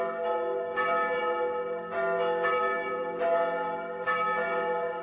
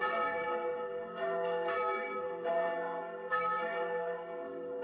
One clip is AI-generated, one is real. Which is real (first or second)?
first